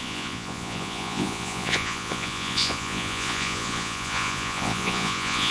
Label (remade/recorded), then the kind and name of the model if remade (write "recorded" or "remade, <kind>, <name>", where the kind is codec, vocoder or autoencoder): remade, vocoder, Vocos